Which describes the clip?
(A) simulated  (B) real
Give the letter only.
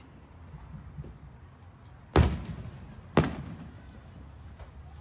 B